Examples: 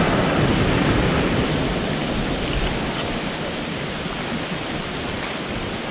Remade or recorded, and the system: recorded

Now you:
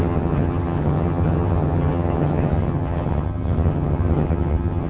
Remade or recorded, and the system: remade, vocoder, HiFi-GAN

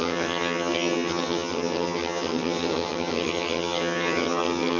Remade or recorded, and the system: remade, vocoder, HiFi-GAN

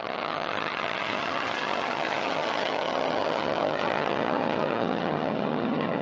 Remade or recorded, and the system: remade, vocoder, HiFi-GAN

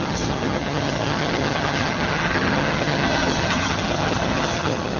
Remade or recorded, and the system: remade, vocoder, HiFi-GAN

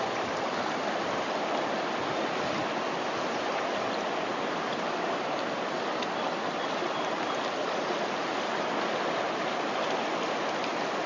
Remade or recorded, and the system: recorded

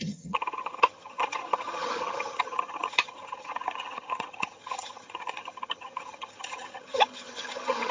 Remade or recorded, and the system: remade, vocoder, HiFi-GAN